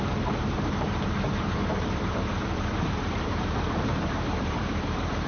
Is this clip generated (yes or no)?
yes